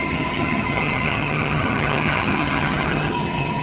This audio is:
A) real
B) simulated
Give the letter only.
B